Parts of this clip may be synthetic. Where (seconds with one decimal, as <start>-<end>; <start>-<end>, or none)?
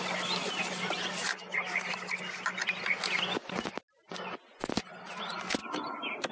5.6-6.3